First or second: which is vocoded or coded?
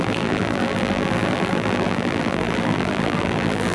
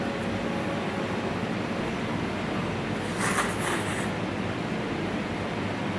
first